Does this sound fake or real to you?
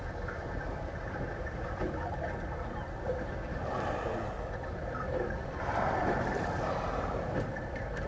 fake